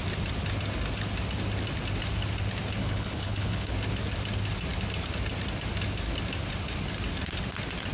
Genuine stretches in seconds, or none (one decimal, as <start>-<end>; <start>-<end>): 0.0-2.8; 3.7-7.9